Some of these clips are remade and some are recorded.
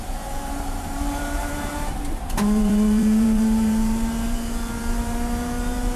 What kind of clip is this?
remade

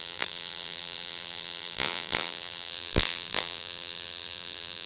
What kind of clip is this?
remade